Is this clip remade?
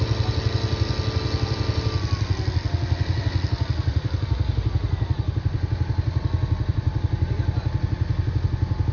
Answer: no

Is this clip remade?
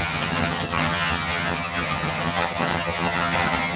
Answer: yes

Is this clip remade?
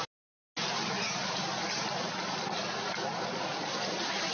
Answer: no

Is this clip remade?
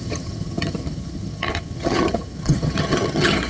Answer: yes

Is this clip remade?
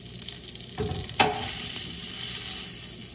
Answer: no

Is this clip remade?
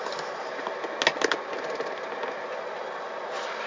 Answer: no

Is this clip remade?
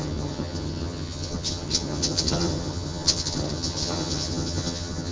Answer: yes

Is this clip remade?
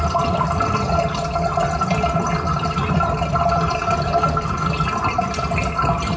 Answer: no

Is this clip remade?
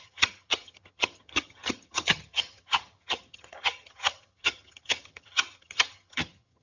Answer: yes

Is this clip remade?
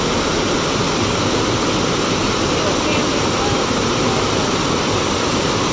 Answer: no